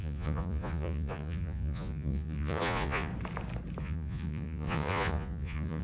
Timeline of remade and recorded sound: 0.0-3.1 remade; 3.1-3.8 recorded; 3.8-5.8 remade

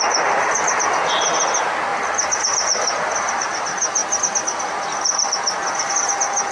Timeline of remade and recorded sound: 0.0-6.5 recorded